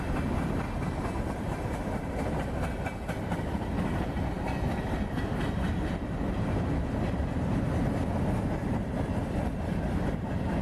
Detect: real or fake real